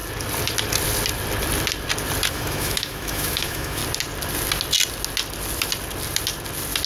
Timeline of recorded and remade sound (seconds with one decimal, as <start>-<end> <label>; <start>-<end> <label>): 0.0-2.3 recorded; 2.3-3.8 remade; 3.8-6.9 recorded